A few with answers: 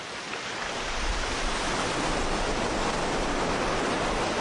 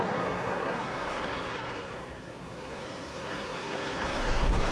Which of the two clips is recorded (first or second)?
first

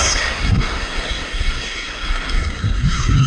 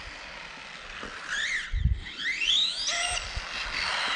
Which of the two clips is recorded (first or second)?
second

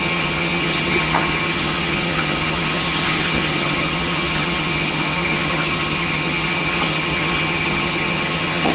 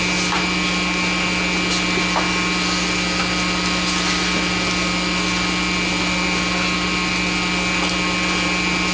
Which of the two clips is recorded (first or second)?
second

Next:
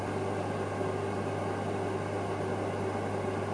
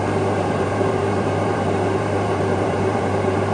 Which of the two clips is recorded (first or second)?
first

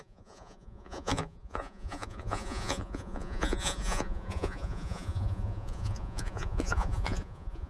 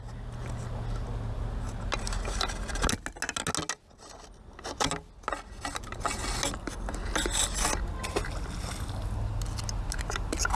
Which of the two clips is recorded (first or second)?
second